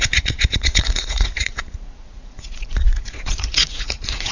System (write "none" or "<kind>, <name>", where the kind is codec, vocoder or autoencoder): vocoder, Vocos